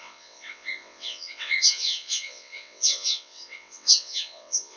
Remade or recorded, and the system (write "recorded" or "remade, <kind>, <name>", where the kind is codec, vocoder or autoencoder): remade, vocoder, WaveNeXt